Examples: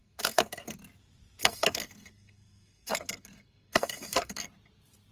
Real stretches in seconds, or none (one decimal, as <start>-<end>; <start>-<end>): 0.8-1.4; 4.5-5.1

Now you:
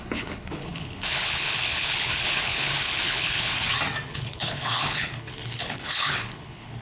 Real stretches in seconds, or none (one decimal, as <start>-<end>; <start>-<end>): 3.5-4.1

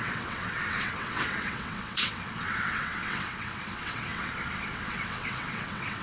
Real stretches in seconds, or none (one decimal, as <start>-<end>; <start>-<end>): none